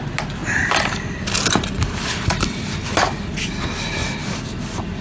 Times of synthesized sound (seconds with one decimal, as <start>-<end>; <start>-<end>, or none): none